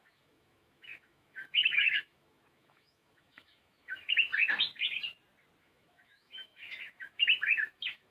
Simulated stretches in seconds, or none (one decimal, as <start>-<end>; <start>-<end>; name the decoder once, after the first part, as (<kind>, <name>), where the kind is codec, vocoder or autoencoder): 0.0-4.3 (autoencoder, DAC-VAE); 5.6-8.1